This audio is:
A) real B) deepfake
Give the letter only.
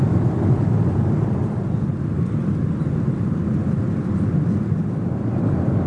A